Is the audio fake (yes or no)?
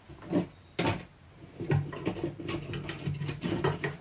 no